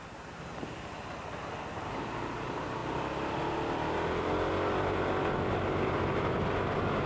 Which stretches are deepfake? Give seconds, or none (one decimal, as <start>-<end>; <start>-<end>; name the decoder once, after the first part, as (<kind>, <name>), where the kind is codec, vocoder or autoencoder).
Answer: none